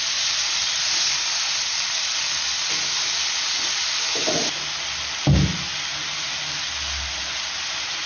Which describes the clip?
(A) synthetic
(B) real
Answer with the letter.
B